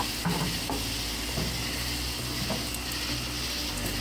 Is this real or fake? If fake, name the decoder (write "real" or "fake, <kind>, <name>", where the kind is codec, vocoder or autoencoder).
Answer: real